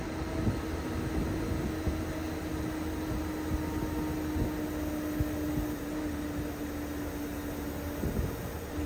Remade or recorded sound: recorded